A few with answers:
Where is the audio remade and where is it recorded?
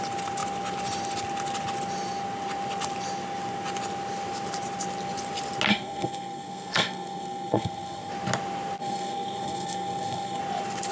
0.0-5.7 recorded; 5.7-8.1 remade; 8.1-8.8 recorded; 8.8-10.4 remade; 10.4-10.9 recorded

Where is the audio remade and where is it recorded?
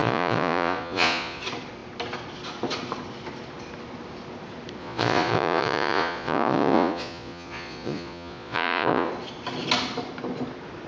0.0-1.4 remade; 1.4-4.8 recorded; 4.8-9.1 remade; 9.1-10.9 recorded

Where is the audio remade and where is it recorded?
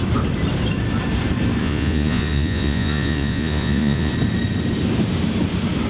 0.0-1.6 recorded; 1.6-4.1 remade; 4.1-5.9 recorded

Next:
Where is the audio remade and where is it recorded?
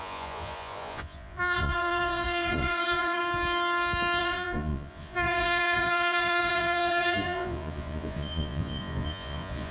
0.0-3.2 remade; 3.2-4.2 recorded; 4.2-9.7 remade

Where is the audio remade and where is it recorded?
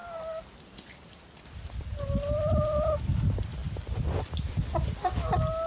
0.0-5.7 recorded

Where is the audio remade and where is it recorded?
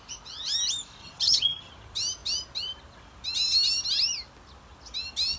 0.0-1.0 recorded; 1.0-1.7 remade; 1.7-5.4 recorded